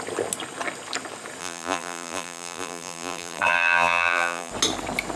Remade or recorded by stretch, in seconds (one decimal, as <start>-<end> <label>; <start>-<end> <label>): 0.0-1.4 recorded; 1.4-4.5 remade; 4.5-5.2 recorded